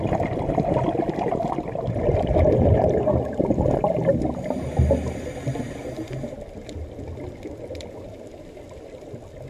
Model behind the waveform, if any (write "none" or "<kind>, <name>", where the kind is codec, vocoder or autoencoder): none